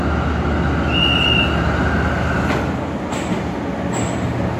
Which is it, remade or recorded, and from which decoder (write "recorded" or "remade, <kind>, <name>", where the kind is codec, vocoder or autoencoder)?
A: recorded